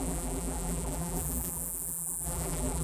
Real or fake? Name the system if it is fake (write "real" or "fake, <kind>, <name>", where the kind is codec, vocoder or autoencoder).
fake, vocoder, BigVGAN v2